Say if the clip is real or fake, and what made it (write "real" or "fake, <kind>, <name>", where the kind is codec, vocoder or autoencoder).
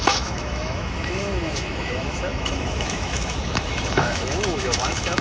fake, autoencoder, DAC-VAE